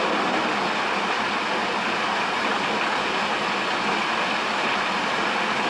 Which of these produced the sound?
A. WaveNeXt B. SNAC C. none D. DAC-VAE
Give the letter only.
C